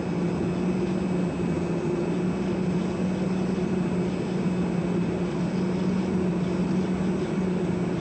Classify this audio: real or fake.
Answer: real